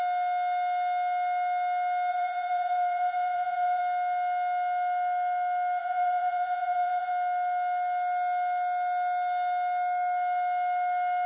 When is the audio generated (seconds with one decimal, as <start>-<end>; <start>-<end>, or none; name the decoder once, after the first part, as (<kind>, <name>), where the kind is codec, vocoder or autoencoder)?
2.1-3.8 (vocoder, Vocos); 5.8-7.1